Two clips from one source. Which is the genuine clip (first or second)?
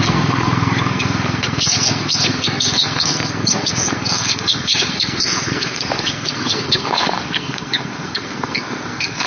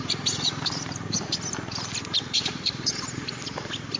second